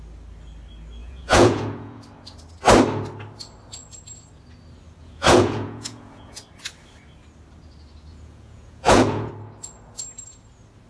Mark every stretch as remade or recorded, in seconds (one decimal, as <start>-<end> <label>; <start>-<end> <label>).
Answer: 0.0-1.0 recorded; 1.0-2.0 remade; 2.0-5.0 recorded; 5.0-6.4 remade; 6.4-8.1 recorded; 8.1-9.3 remade; 9.3-10.9 recorded